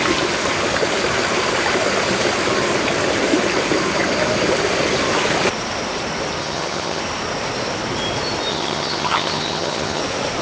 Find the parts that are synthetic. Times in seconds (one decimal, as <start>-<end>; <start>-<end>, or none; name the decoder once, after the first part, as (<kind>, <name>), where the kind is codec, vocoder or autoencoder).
6.4-7.0 (vocoder, HiFi-GAN); 8.5-10.0